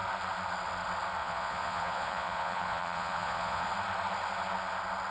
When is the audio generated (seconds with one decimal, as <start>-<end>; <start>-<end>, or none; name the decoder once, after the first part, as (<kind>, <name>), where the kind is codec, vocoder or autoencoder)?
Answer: 1.2-3.7 (vocoder, Vocos)